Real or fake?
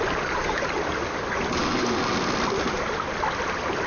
real